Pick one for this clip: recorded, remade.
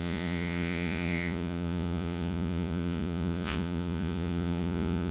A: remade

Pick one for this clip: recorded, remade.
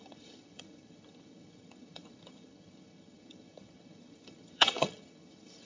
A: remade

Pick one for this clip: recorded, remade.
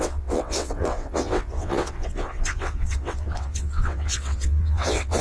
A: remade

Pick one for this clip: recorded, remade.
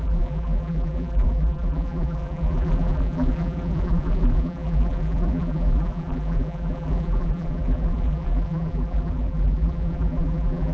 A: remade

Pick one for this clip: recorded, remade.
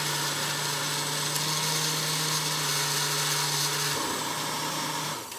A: recorded